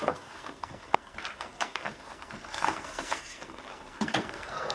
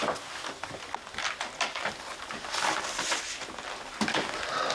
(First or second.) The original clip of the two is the second